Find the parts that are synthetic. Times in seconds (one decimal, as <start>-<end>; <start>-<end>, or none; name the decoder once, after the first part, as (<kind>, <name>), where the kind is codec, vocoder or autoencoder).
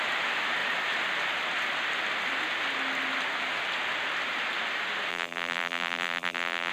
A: 5.1-6.7 (vocoder, BigVGAN v2)